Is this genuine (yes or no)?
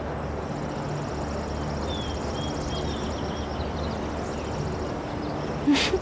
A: yes